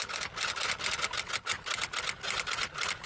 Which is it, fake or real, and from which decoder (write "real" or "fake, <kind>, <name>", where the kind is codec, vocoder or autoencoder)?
real